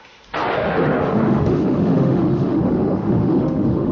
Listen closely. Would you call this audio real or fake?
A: fake